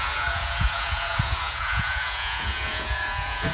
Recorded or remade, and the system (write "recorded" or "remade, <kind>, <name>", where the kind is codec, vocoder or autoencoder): remade, vocoder, Vocos